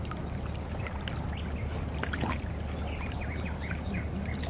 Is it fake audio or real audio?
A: real